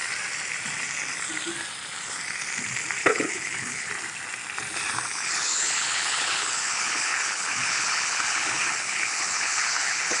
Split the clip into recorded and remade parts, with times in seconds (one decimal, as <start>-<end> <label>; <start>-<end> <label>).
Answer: 0.0-3.0 recorded; 3.0-3.9 remade; 3.9-5.1 recorded; 5.1-10.2 remade